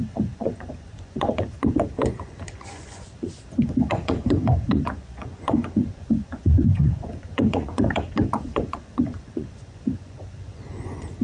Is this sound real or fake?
fake